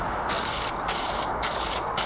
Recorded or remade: remade